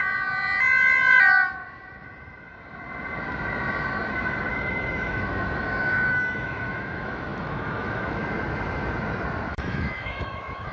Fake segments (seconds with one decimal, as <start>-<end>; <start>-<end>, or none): 4.5-8.2; 9.5-10.7